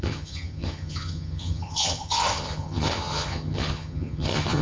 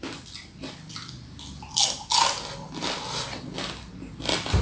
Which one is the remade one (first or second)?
first